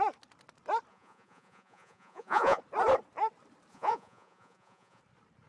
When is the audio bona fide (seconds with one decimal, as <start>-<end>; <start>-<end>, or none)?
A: 0.0-0.9; 2.6-3.7; 5.0-5.5